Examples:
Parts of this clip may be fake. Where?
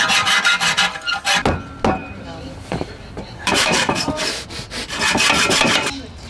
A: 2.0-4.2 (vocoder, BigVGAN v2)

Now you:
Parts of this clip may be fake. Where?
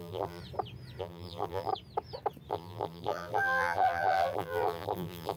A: 0.0-0.4 (vocoder, BigVGAN v2); 1.0-1.7; 2.5-5.4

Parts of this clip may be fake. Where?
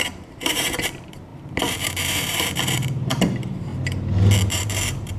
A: 0.0-3.7 (vocoder, BigVGAN v2); 4.5-5.2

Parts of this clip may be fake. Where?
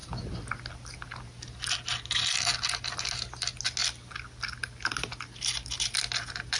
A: none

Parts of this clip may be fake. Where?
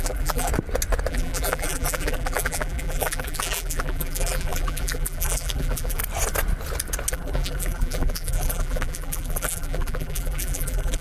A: 0.0-0.5 (vocoder, BigVGAN v2); 1.1-6.0; 7.1-11.0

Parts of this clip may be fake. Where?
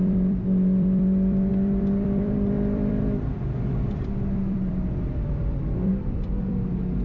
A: 0.0-7.0 (vocoder, BigVGAN v2)